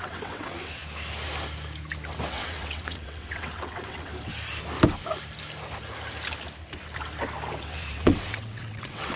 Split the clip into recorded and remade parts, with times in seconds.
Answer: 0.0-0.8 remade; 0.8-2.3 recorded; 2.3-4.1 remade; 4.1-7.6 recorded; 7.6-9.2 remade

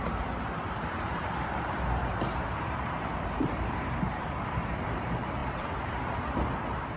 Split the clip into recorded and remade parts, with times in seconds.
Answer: 0.0-7.0 remade

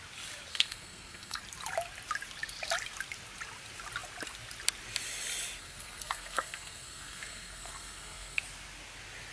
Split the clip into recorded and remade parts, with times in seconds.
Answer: 0.0-0.5 recorded; 0.5-1.4 remade; 1.4-5.6 recorded; 5.6-8.4 remade; 8.4-9.3 recorded

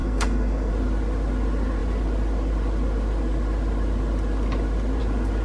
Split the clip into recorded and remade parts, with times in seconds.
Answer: 0.0-0.7 remade; 0.7-5.4 recorded

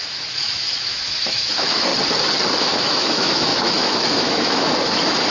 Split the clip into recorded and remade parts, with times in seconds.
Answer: 0.0-1.9 remade; 1.9-2.6 recorded; 2.6-5.3 remade

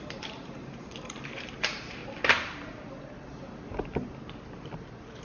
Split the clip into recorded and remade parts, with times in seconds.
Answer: 0.0-2.0 remade; 2.0-5.2 recorded

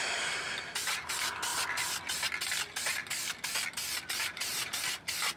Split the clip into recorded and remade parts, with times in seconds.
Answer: 0.0-1.5 remade; 1.5-4.2 recorded; 4.2-5.4 remade